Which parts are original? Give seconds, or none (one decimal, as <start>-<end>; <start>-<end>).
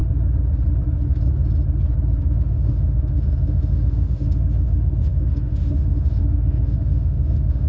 0.0-2.2